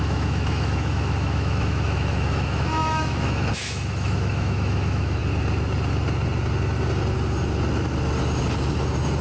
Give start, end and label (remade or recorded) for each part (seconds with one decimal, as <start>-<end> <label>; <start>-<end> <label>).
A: 0.0-5.2 remade; 5.2-9.2 recorded